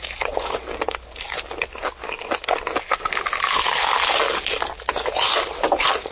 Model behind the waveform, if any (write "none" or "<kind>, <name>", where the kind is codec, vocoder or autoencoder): none